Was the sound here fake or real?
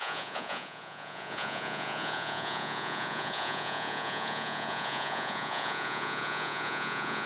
fake